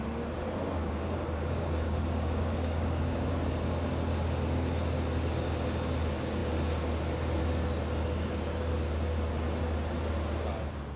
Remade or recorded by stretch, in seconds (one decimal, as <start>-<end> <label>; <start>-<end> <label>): 0.0-0.8 recorded; 0.8-3.3 remade; 3.3-11.0 recorded